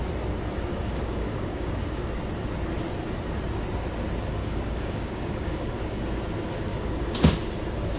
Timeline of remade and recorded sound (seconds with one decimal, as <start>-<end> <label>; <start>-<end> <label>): 0.0-0.7 recorded; 0.7-2.0 remade; 2.0-4.4 recorded; 4.4-6.0 remade; 6.0-6.7 recorded; 6.7-7.3 remade; 7.3-8.0 recorded